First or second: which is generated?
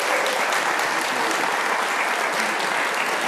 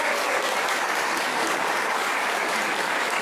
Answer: second